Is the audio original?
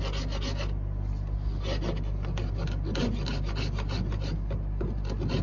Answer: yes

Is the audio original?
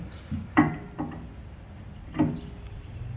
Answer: yes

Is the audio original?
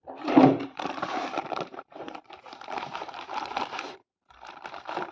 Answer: no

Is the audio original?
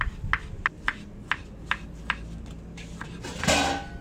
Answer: yes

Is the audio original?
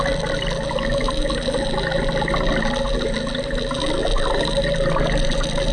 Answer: yes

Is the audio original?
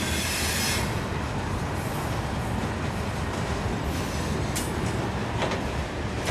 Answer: yes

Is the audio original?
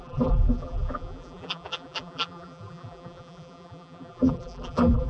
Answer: no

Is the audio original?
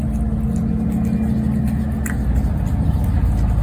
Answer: yes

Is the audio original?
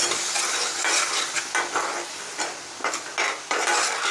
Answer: yes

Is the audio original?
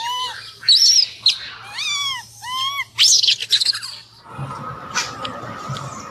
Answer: yes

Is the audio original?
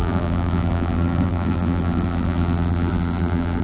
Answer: no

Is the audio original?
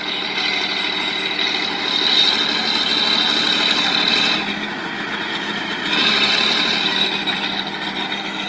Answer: yes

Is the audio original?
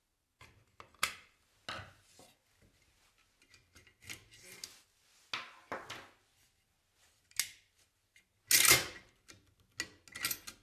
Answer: yes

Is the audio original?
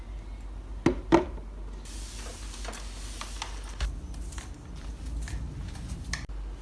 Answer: yes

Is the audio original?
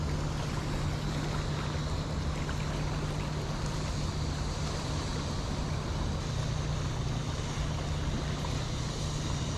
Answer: yes